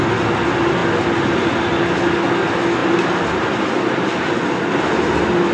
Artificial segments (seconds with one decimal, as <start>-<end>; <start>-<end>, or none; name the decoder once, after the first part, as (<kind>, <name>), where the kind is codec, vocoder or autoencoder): 2.8-4.6 (vocoder, BigVGAN v2)